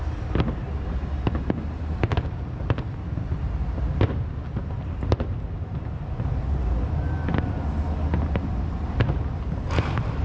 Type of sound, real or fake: real